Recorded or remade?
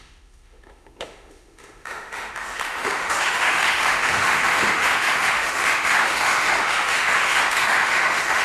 remade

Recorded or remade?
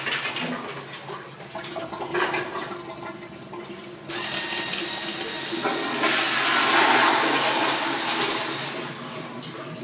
recorded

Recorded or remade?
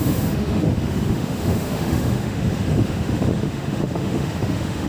remade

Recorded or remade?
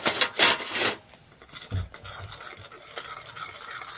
recorded